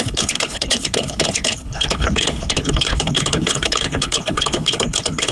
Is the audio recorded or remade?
remade